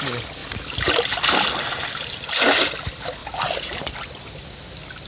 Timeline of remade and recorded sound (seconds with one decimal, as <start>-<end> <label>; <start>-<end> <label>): 0.0-5.1 recorded